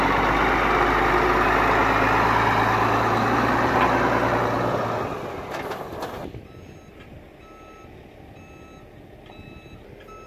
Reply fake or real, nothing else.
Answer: real